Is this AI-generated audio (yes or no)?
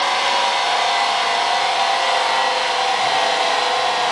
no